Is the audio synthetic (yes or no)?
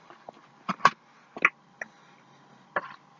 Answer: no